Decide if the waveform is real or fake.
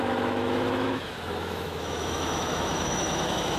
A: fake